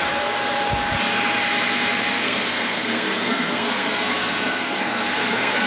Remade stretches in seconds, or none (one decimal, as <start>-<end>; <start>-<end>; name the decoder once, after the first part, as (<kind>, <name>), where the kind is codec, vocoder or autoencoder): 2.2-5.7 (codec, SNAC)